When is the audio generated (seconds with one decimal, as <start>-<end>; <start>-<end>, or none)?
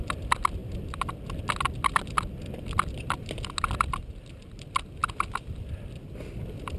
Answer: none